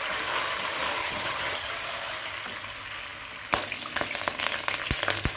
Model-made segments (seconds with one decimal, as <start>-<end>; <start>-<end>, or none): 1.0-1.7

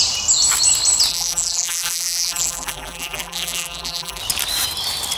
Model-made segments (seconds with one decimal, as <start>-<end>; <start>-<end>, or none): 1.1-4.2

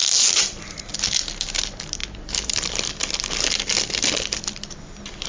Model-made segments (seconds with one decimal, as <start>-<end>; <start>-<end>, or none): none